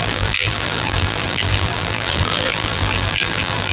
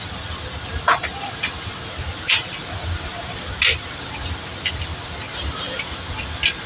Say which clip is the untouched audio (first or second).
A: second